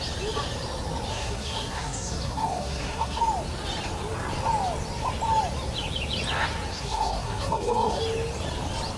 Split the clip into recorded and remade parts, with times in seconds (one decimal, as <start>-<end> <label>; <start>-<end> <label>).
0.0-1.1 recorded; 1.1-3.2 remade; 3.2-6.7 recorded; 6.7-8.0 remade; 8.0-9.0 recorded